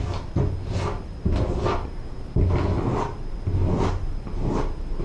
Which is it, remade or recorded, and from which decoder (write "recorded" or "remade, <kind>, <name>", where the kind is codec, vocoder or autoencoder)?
recorded